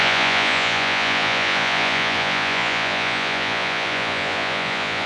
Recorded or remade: remade